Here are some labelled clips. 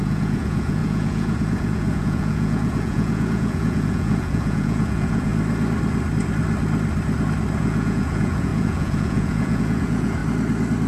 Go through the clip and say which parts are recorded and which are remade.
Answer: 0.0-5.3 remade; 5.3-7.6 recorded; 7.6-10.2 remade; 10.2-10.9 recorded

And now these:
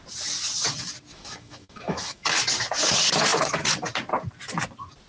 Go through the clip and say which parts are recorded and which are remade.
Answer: 0.0-1.1 recorded; 1.1-2.3 remade; 2.3-5.1 recorded

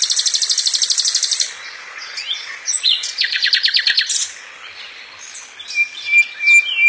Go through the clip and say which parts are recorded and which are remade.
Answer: 0.0-1.6 recorded; 1.6-3.5 remade; 3.5-6.9 recorded